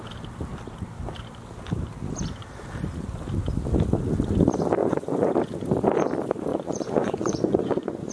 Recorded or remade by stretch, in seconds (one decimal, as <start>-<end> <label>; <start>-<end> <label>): 0.0-4.8 recorded; 4.8-5.3 remade; 5.3-6.5 recorded; 6.5-8.1 remade